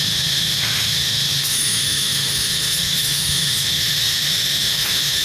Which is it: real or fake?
fake